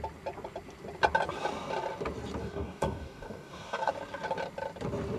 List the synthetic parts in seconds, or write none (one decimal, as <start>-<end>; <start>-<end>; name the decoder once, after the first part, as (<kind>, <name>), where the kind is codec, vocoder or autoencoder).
2.4-3.9 (codec, DAC)

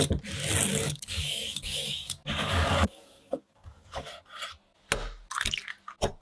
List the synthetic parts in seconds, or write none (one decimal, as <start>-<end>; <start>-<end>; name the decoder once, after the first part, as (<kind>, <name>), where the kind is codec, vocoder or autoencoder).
0.7-4.1 (codec, DAC)